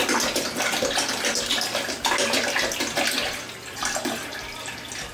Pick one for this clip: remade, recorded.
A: recorded